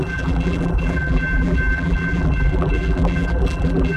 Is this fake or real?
fake